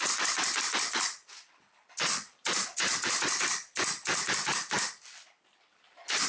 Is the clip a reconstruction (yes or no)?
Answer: no